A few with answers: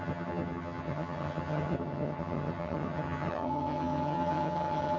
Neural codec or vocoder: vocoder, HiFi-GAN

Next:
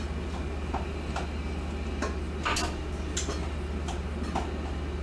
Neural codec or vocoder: none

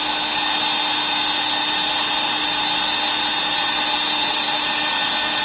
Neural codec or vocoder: none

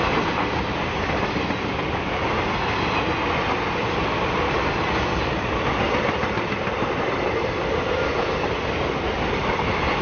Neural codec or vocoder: none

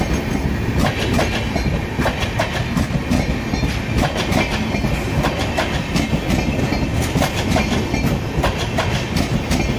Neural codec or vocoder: none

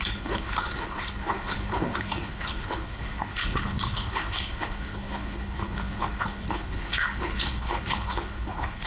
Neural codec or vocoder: codec, HILCodec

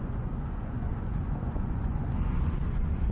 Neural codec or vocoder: vocoder, Vocos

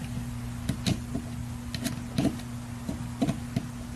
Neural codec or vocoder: none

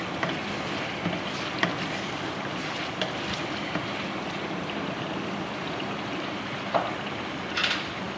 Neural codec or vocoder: none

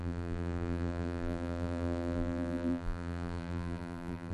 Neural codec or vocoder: vocoder, BigVGAN v2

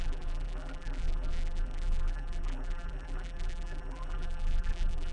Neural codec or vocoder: vocoder, BigVGAN v2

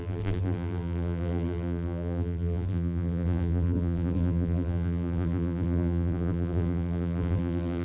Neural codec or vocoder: vocoder, BigVGAN v2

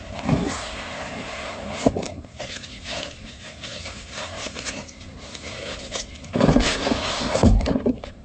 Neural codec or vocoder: codec, SNAC